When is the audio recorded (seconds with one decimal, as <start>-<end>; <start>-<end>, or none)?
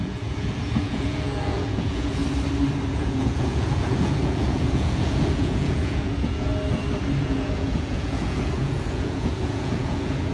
2.2-2.9; 6.5-7.2